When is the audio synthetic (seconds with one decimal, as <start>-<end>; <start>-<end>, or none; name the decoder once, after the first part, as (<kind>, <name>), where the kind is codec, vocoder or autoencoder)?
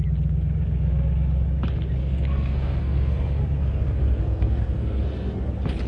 2.0-5.5 (codec, SNAC)